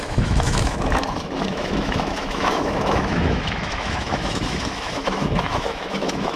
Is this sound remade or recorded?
remade